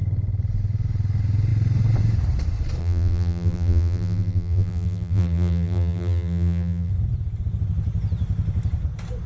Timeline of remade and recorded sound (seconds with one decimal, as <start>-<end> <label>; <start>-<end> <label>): 0.0-2.8 recorded; 2.8-6.9 remade; 6.9-9.3 recorded